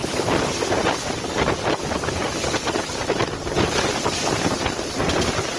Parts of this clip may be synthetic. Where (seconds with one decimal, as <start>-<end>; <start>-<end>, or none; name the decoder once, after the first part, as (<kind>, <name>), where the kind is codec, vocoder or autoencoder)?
none